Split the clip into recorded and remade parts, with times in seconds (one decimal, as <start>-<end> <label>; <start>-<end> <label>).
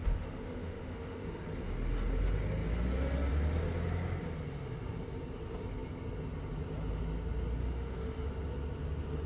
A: 0.0-1.3 remade; 1.3-7.6 recorded; 7.6-8.3 remade; 8.3-9.3 recorded